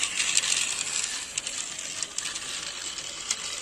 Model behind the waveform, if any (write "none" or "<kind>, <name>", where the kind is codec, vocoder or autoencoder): none